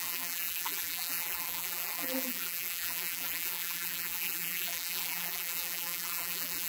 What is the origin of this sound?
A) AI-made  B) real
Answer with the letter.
A